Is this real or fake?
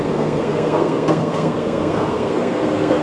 fake